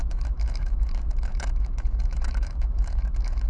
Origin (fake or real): fake